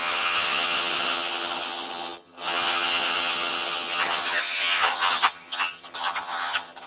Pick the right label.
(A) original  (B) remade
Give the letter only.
B